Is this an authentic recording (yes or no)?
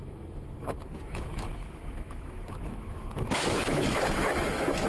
no